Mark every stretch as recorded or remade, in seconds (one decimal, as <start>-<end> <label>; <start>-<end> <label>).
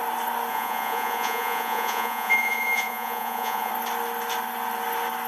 0.0-0.5 recorded; 0.5-3.7 remade; 3.7-5.3 recorded